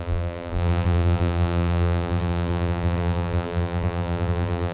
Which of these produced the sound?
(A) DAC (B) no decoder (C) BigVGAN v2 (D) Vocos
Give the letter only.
C